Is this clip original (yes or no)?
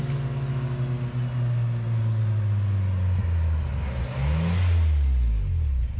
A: yes